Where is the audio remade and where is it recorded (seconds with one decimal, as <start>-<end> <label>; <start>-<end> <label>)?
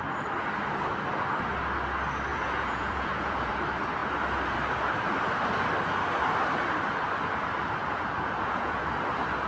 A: 0.0-2.3 recorded; 2.3-3.5 remade; 3.5-7.8 recorded; 7.8-8.9 remade; 8.9-9.5 recorded